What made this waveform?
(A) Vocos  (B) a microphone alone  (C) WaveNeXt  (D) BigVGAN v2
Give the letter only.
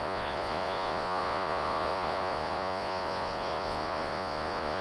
A